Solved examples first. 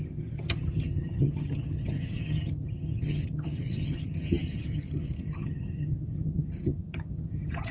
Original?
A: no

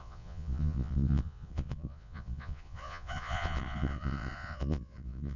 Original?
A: no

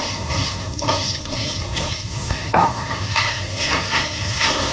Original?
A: no